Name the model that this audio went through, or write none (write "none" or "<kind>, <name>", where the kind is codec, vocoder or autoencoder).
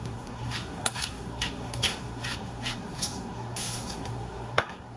codec, SNAC